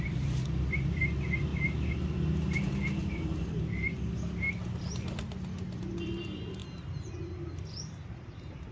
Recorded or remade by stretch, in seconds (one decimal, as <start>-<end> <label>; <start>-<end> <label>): 0.0-1.5 remade; 1.5-5.8 recorded; 5.8-6.6 remade; 6.6-7.5 recorded; 7.5-8.7 remade